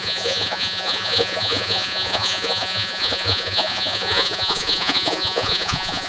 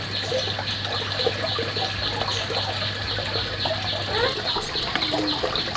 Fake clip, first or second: first